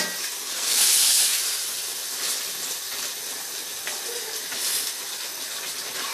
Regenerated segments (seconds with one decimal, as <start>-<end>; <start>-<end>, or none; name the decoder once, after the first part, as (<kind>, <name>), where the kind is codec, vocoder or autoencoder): 0.4-1.4 (codec, SNAC)